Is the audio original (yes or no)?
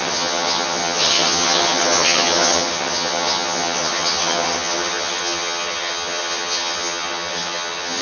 no